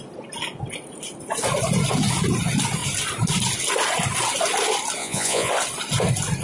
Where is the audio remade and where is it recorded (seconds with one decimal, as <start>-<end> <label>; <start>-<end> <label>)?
0.0-5.0 recorded; 5.0-5.5 remade; 5.5-6.4 recorded